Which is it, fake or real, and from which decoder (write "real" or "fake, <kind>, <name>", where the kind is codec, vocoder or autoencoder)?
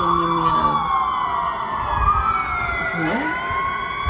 real